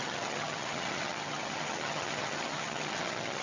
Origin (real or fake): fake